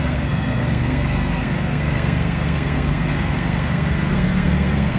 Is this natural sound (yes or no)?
no